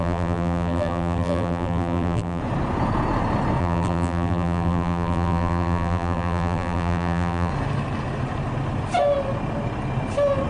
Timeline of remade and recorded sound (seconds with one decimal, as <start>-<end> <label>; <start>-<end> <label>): 0.0-2.4 remade; 2.4-3.6 recorded; 3.6-7.5 remade; 7.5-10.5 recorded